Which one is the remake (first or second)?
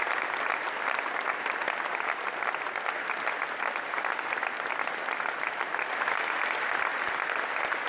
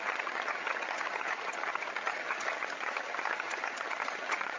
second